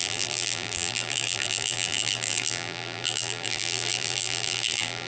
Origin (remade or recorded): remade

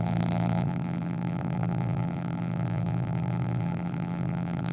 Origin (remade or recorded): remade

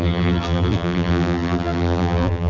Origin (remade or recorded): remade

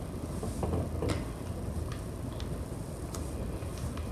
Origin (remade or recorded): recorded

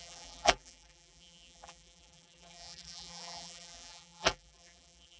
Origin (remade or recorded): remade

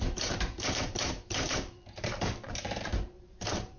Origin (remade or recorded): remade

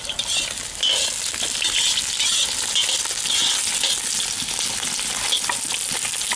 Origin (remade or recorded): recorded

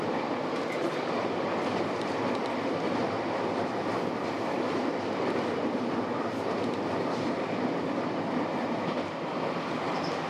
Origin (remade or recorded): remade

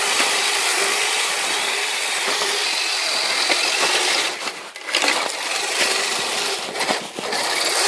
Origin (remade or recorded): recorded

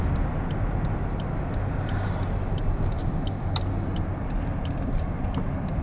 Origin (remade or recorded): recorded